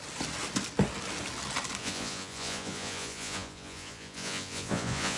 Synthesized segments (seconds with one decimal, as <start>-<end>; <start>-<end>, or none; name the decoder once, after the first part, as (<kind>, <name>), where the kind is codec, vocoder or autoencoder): 1.8-5.2 (vocoder, Vocos)